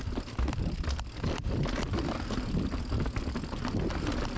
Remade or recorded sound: recorded